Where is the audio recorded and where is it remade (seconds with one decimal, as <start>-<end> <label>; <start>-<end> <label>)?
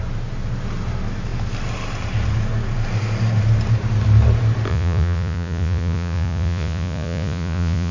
0.0-4.7 recorded; 4.7-7.9 remade